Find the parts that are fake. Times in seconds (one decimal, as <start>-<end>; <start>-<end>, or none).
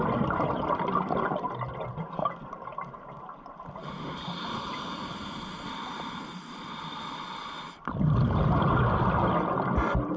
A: none